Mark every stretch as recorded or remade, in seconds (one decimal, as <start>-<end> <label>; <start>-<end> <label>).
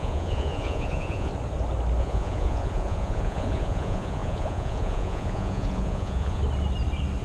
0.0-1.3 remade; 1.3-2.0 recorded; 2.0-6.4 remade; 6.4-7.2 recorded